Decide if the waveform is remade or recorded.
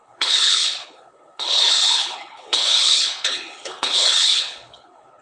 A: remade